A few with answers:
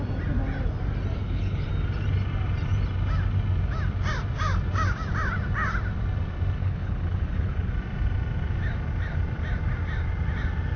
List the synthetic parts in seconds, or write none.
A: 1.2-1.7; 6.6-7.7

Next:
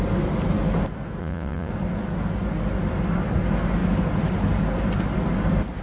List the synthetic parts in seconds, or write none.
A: 1.2-1.7

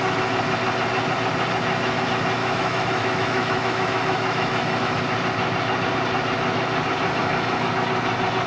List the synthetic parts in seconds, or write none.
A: 2.4-5.0; 7.2-7.7

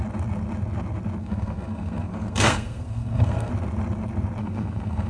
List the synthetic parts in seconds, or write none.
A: 1.2-3.5; 4.4-5.1

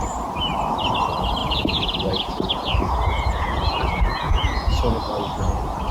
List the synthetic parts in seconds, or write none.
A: 1.4-4.8

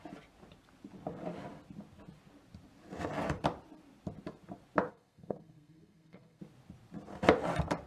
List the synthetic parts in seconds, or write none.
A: 4.9-6.4

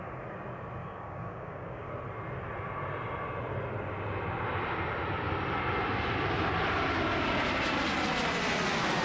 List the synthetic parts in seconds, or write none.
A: 0.8-1.9